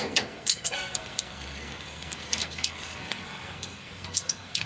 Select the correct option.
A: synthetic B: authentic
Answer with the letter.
A